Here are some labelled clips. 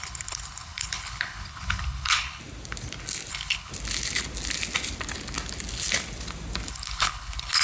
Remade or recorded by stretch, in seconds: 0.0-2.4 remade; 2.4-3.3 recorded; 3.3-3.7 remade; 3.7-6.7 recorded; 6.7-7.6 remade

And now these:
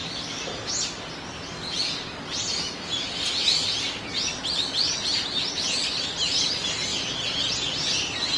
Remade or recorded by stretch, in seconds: 0.0-5.8 recorded; 5.8-6.5 remade; 6.5-8.4 recorded

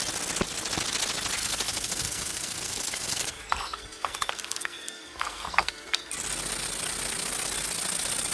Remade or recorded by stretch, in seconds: 0.0-1.4 recorded; 1.4-6.1 remade; 6.1-8.3 recorded

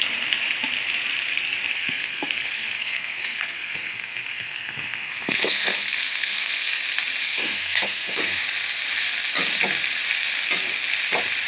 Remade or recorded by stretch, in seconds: 0.0-1.7 recorded; 1.7-6.8 remade; 6.8-7.2 recorded; 7.2-8.4 remade; 8.4-11.5 recorded

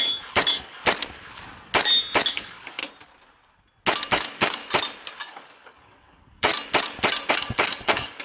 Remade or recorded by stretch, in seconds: 0.0-0.8 remade; 0.8-2.3 recorded; 2.3-2.8 remade; 2.8-4.1 recorded; 4.1-4.6 remade; 4.6-5.2 recorded; 5.2-6.5 remade; 6.5-7.3 recorded; 7.3-8.2 remade